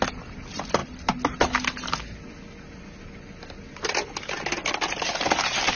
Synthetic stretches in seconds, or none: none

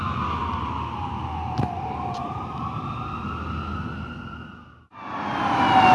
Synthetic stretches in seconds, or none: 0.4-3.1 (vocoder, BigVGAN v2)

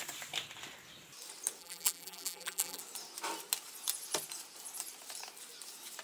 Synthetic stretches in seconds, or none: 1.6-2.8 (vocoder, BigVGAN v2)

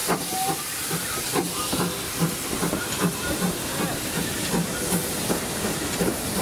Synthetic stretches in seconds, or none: 5.0-6.4 (vocoder, BigVGAN v2)